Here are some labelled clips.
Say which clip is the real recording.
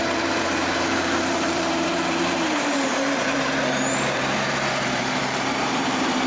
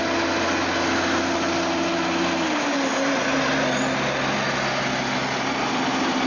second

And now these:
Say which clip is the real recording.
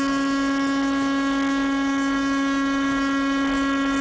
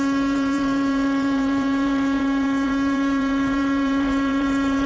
first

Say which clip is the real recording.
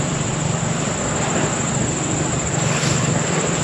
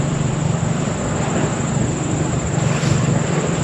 second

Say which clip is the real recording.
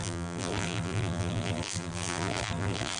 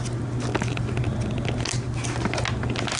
second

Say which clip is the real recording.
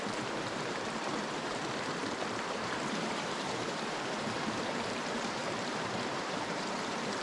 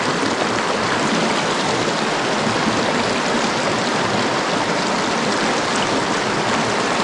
second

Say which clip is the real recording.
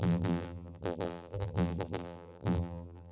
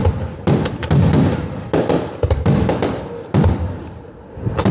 second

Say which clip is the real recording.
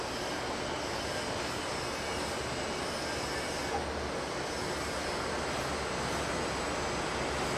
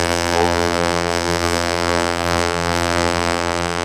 first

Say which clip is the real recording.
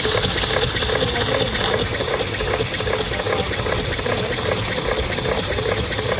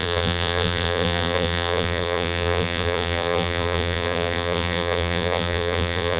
first